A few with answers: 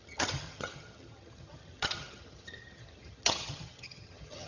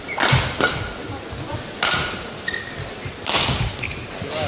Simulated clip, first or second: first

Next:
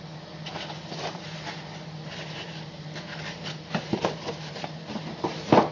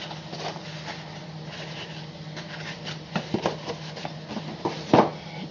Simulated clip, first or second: first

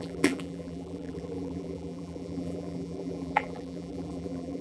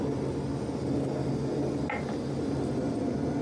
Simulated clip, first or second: first